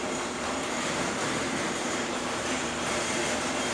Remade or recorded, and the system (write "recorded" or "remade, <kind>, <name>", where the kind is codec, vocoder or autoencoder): remade, vocoder, BigVGAN v2